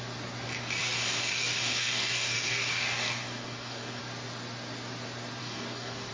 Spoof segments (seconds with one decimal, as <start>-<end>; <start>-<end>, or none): 0.8-4.0; 5.4-6.1